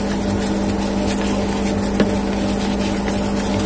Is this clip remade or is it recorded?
recorded